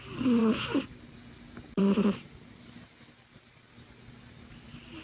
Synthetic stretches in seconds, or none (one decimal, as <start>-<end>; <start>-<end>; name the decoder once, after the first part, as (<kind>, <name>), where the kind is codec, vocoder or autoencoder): 0.4-1.0 (vocoder, BigVGAN v2); 1.8-2.6